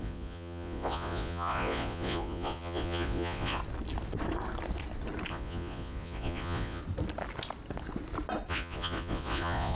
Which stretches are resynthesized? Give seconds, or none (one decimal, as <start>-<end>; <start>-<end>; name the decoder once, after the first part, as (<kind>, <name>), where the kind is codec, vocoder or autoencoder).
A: 0.0-3.6 (vocoder, Vocos); 5.3-6.8; 8.5-9.8